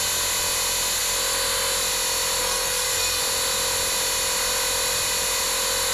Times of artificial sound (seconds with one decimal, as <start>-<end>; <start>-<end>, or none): 2.4-3.2